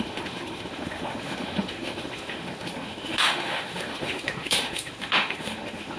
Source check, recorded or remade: remade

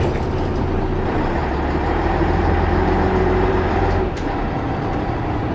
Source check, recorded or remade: remade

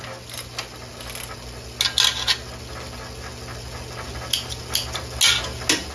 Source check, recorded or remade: recorded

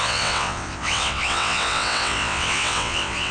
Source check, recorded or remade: remade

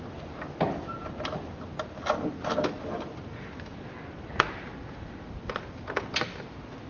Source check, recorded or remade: recorded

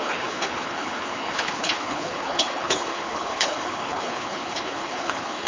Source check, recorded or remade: remade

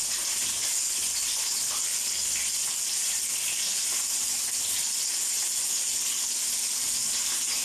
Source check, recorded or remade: recorded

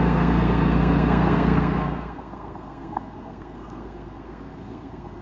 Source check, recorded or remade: remade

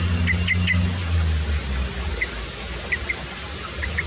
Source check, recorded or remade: recorded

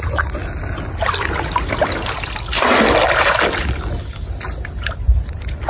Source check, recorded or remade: recorded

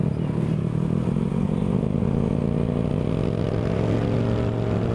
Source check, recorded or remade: recorded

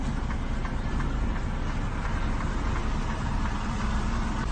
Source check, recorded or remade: recorded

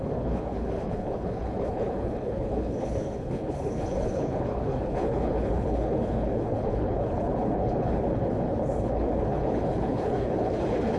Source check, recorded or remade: remade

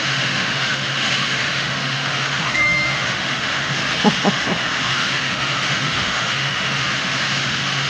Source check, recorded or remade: remade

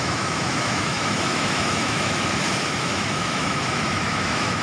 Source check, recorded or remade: remade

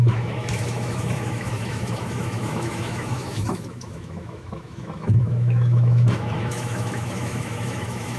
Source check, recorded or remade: remade